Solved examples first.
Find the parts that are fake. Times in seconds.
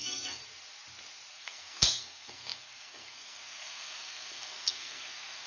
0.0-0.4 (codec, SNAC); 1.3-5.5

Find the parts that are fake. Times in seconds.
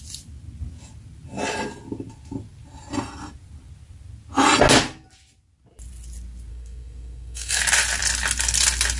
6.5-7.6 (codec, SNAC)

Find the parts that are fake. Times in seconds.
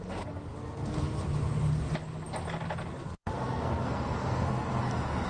0.5-1.0 (codec, SNAC); 2.9-4.8